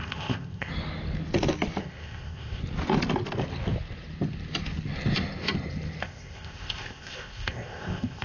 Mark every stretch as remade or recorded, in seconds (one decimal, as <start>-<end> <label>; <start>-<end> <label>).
0.0-0.7 remade; 0.7-1.8 recorded; 1.8-2.6 remade; 2.6-6.0 recorded; 6.0-8.2 remade